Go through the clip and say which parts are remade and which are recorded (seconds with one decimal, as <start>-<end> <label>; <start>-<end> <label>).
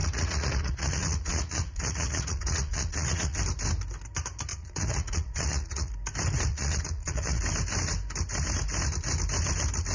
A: 0.0-3.4 remade; 3.4-4.5 recorded; 4.5-5.9 remade; 5.9-6.5 recorded; 6.5-7.4 remade; 7.4-9.9 recorded